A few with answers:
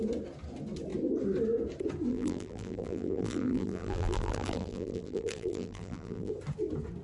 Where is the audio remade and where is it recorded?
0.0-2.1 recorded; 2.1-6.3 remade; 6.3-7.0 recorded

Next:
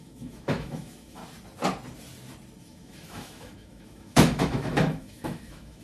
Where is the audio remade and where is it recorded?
0.0-1.2 remade; 1.2-2.6 recorded; 2.6-5.8 remade